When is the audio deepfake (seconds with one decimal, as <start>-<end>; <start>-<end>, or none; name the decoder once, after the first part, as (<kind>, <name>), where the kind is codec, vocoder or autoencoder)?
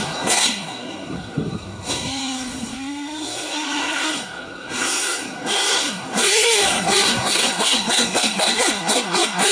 0.0-9.5 (codec, SNAC)